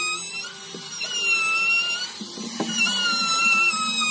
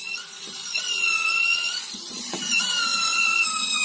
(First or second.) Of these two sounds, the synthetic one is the second